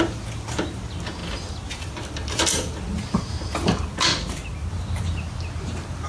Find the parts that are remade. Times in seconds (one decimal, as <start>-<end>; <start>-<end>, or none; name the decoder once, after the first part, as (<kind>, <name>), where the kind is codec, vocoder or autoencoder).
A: none